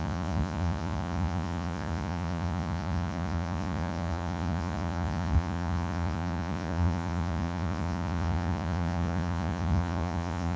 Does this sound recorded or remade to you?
remade